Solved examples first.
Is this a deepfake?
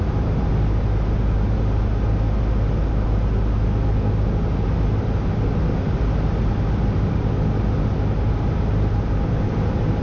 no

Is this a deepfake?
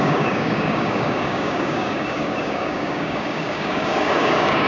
yes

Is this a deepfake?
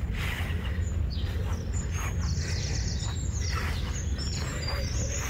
no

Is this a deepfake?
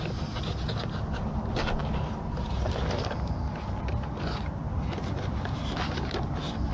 no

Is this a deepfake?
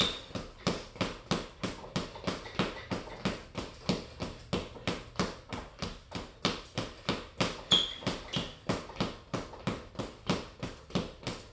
no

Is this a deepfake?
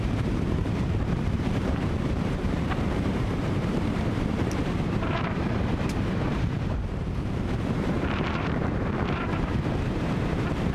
yes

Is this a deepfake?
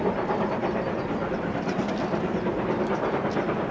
no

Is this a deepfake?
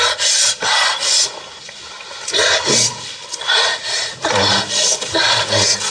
no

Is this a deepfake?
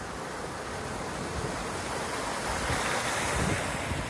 no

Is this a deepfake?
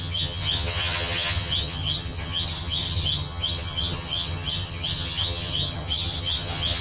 yes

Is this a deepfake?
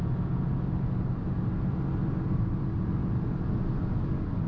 no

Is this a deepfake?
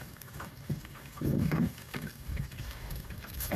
yes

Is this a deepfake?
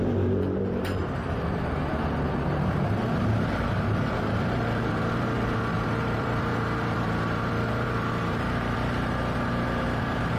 yes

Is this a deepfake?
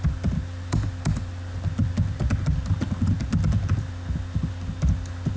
no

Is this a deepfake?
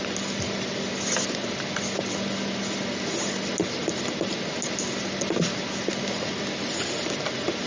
no